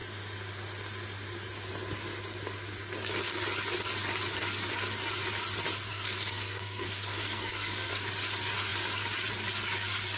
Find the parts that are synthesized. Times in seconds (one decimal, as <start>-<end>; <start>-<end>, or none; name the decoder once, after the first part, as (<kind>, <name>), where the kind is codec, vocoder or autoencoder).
5.9-7.9 (codec, SNAC)